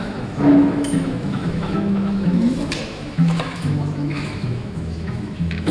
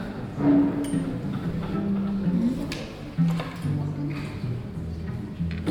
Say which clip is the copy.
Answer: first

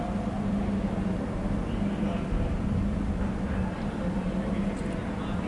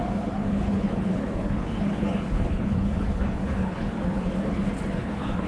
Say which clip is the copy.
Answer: second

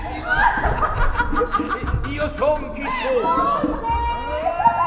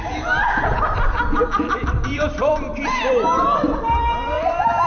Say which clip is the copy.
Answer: second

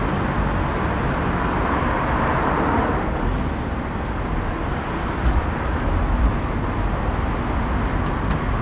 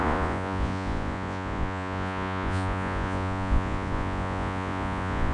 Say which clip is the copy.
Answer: second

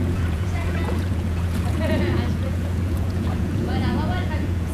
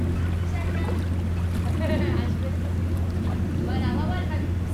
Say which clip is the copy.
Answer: first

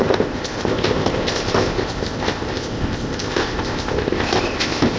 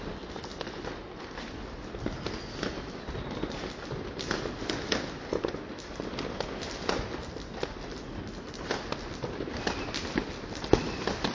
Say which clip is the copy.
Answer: first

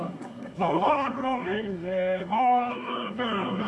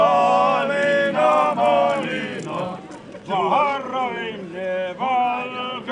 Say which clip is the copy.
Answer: first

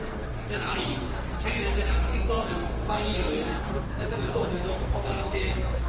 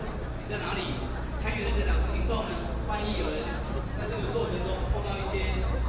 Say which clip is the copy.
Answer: first